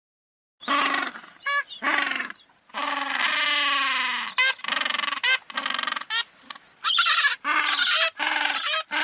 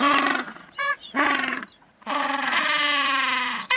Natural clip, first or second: first